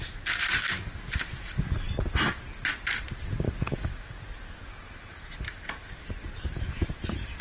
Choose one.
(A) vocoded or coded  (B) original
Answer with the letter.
B